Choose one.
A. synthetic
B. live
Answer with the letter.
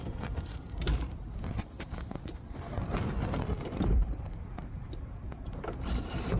A